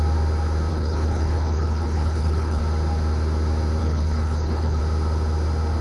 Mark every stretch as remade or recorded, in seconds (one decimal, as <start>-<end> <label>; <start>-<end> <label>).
0.0-0.7 recorded; 0.7-2.6 remade; 2.6-3.8 recorded; 3.8-4.8 remade; 4.8-5.8 recorded